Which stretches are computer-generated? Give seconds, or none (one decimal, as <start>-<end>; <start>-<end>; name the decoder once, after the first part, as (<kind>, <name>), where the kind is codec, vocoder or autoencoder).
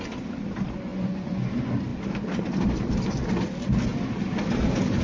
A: 0.9-1.5 (vocoder, Vocos)